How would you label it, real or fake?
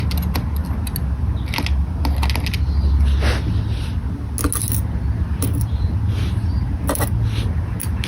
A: real